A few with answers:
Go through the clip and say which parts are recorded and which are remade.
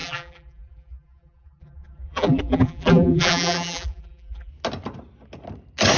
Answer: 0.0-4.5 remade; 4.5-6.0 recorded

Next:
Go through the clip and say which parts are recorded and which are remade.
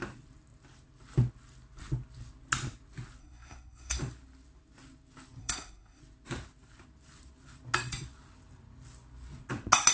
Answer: 0.0-3.2 recorded; 3.2-4.0 remade; 4.0-5.4 recorded; 5.4-6.0 remade; 6.0-9.9 recorded